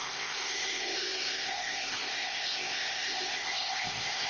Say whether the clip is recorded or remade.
remade